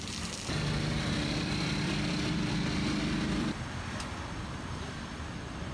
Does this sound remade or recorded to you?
remade